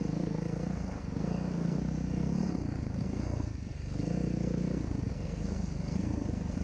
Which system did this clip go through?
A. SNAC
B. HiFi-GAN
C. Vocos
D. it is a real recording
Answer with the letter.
A